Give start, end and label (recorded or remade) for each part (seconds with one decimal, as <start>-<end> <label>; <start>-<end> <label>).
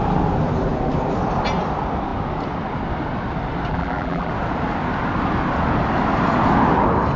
0.0-3.7 recorded; 3.7-4.3 remade; 4.3-7.2 recorded